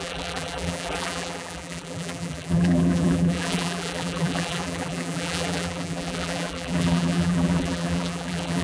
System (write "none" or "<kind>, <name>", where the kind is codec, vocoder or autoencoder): vocoder, BigVGAN v2